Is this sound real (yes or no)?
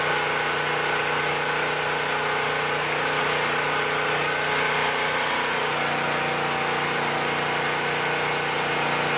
yes